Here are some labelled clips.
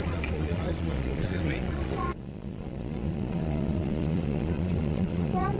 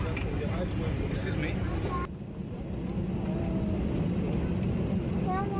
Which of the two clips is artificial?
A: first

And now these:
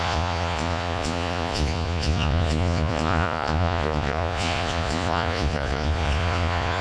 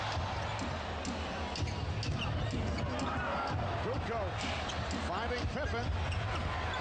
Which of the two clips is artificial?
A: first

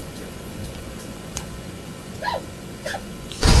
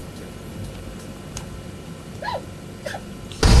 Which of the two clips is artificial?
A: first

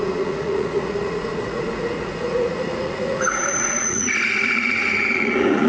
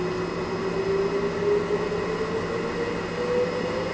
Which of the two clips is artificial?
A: first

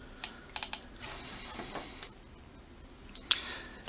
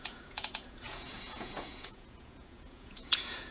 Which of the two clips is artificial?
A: second